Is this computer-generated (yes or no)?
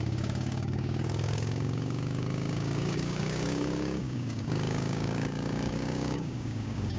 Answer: yes